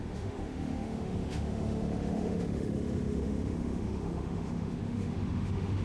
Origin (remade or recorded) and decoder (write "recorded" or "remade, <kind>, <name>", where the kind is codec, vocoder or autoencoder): remade, autoencoder, DAC-VAE